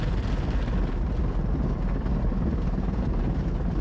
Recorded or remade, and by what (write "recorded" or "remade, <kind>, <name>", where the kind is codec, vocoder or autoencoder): recorded